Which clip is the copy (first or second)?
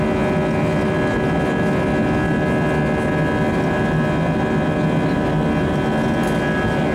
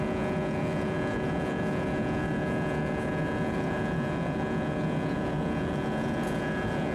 second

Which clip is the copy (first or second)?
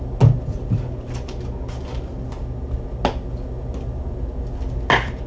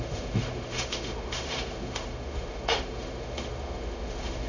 second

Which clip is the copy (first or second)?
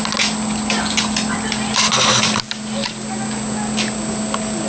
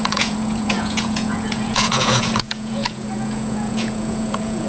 second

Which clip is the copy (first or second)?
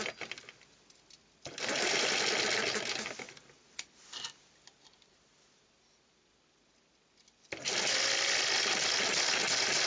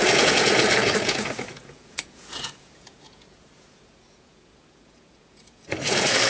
second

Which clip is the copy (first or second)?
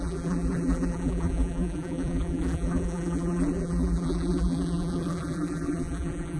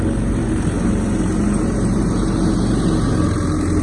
first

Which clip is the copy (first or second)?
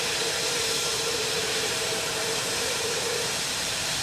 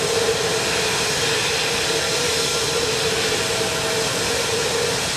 first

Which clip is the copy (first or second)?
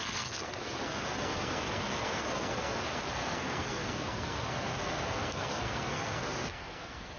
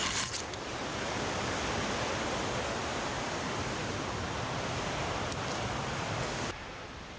first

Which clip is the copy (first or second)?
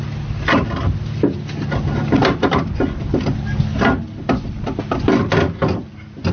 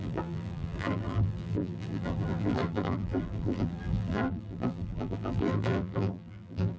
second